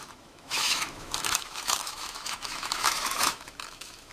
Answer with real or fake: fake